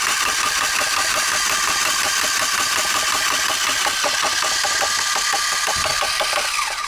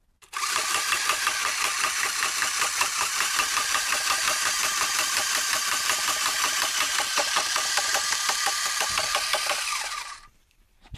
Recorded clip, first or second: first